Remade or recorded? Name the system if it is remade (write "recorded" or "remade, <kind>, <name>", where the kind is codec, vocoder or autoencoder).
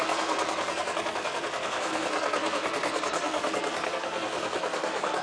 remade, codec, SNAC